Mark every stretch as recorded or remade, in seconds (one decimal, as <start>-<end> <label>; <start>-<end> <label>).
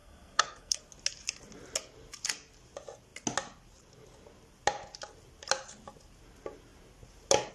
0.0-0.8 remade; 0.8-7.5 recorded